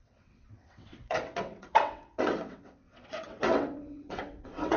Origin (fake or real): fake